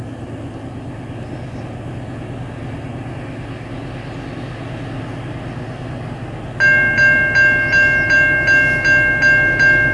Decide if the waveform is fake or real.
real